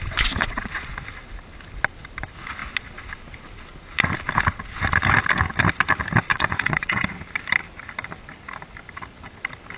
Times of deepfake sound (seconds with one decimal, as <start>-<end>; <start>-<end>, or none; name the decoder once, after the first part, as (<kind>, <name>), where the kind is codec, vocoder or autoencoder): 0.4-0.9 (vocoder, Vocos); 6.3-7.1